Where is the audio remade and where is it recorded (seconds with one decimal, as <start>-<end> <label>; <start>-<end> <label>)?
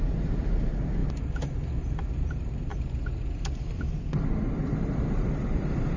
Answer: 0.0-1.0 remade; 1.0-2.0 recorded; 2.0-2.7 remade; 2.7-4.4 recorded; 4.4-6.0 remade